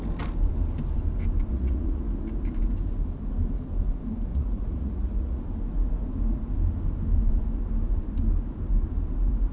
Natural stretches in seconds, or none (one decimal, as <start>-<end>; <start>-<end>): 0.0-1.5; 2.0-4.3; 5.4-9.5